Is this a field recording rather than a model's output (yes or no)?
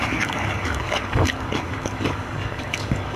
no